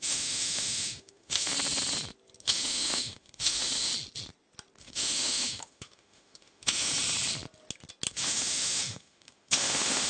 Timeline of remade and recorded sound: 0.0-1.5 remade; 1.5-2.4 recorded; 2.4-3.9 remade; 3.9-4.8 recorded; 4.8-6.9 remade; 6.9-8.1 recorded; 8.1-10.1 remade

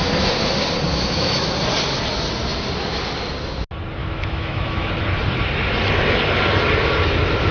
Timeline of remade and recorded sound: 0.0-0.9 recorded; 0.9-1.5 remade; 1.5-4.0 recorded; 4.0-4.9 remade; 4.9-7.5 recorded